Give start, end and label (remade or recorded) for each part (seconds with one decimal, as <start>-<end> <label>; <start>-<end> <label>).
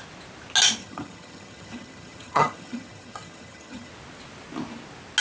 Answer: 0.0-0.8 recorded; 0.8-3.9 remade; 3.9-5.2 recorded